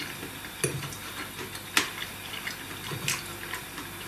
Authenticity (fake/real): real